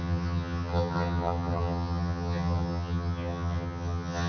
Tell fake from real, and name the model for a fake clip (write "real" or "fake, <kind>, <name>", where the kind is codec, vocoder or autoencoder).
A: fake, vocoder, HiFi-GAN